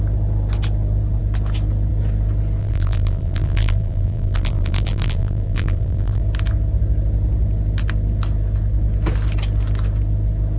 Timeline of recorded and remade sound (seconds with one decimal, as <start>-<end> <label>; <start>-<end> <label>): 0.0-2.6 recorded; 2.6-6.2 remade; 6.2-10.6 recorded